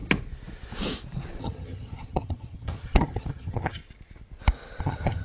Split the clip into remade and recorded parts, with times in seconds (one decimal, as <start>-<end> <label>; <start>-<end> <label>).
0.0-1.4 recorded; 1.4-3.8 remade; 3.8-4.8 recorded; 4.8-5.2 remade